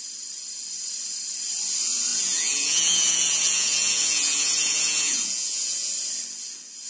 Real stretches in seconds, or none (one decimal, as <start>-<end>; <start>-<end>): 0.0-2.1; 5.9-6.9